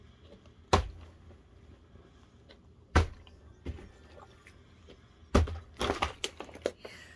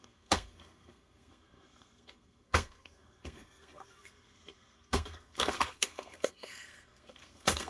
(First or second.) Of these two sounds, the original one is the first